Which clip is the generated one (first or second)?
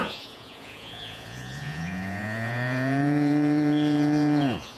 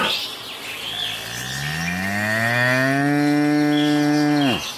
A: first